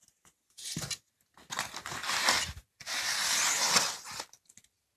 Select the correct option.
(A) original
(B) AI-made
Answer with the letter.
A